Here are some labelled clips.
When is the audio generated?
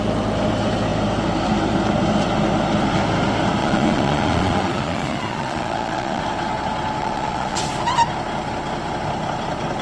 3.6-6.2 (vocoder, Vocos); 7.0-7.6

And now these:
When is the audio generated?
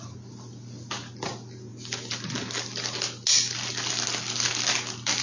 none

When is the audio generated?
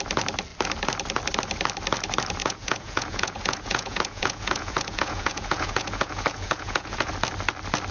2.4-7.1 (vocoder, Vocos)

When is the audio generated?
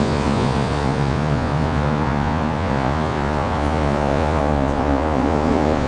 0.0-5.9 (vocoder, Vocos)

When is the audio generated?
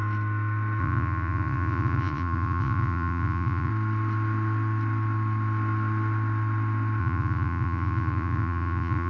0.8-3.7 (vocoder, Vocos); 7.0-9.1